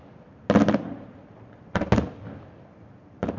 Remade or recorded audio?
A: recorded